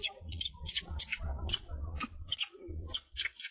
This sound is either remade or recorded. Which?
remade